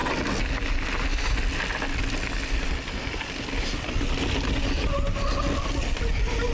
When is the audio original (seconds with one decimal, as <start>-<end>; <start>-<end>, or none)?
0.0-6.5